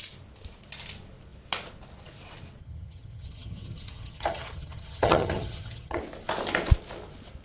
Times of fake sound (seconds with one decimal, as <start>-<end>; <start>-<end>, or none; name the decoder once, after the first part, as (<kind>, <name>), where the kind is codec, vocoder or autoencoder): 2.6-6.0 (vocoder, HiFi-GAN)